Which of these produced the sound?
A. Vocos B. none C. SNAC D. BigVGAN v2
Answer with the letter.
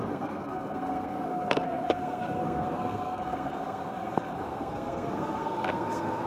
C